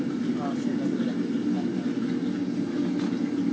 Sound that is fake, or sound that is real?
real